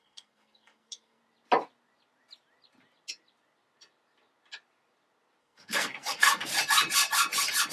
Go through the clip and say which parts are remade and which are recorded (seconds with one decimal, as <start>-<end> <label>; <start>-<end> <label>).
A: 0.0-1.2 remade; 1.2-5.4 recorded; 5.4-6.5 remade; 6.5-7.7 recorded